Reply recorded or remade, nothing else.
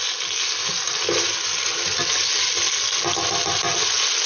recorded